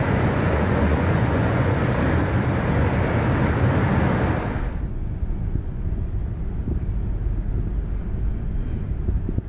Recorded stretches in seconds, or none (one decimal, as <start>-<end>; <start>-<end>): 1.8-4.9; 6.2-8.3